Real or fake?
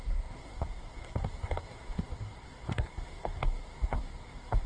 fake